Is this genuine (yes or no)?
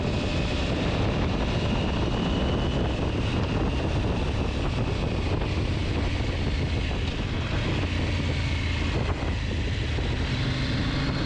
yes